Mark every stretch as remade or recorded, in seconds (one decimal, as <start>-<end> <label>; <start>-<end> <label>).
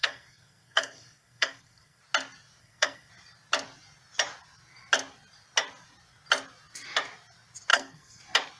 0.0-2.0 remade; 2.0-2.6 recorded; 2.6-3.1 remade; 3.1-7.7 recorded; 7.7-8.2 remade; 8.2-8.6 recorded